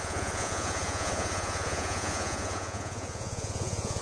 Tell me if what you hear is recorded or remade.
remade